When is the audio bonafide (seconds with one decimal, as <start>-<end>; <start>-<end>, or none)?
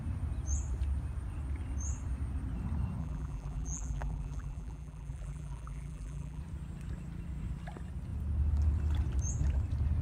0.0-3.0; 6.4-10.0